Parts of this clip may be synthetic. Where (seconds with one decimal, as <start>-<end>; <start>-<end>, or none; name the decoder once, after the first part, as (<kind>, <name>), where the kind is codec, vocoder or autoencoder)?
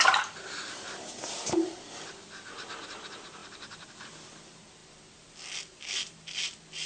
none